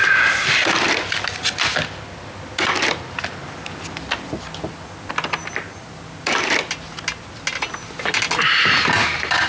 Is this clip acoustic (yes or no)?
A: yes